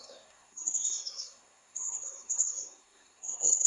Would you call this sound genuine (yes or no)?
no